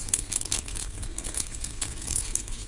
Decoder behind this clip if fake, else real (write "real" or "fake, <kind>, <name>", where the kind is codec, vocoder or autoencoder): fake, codec, SNAC